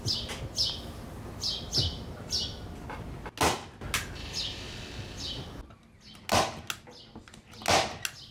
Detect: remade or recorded recorded